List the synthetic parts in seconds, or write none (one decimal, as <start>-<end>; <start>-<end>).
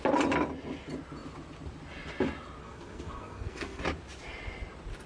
2.6-3.8